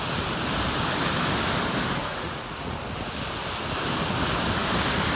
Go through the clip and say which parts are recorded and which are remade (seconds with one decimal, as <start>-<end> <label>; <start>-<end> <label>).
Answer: 0.0-2.0 recorded; 2.0-2.7 remade; 2.7-5.2 recorded